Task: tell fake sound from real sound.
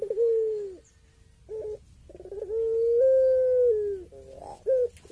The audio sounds real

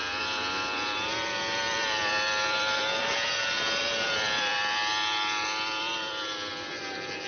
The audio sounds fake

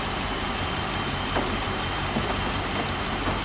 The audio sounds fake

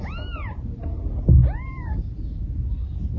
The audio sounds real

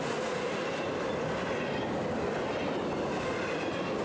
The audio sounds real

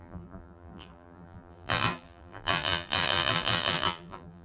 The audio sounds fake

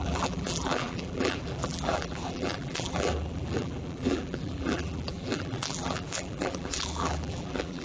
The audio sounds fake